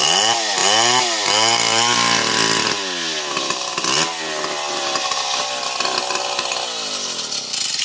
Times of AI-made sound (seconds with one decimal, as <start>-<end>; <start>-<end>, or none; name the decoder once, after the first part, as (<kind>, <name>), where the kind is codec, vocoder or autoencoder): none